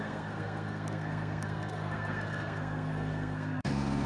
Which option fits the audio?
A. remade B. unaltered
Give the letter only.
A